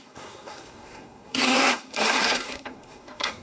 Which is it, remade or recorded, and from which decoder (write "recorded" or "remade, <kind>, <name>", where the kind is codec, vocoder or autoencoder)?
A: remade, codec, SNAC